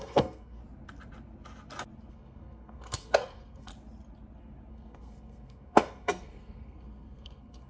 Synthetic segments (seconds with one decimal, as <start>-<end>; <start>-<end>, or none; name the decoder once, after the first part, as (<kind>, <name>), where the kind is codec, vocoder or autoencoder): 0.0-0.6 (codec, SNAC); 2.1-3.7; 4.7-7.7